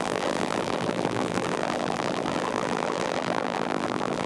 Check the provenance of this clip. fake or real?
fake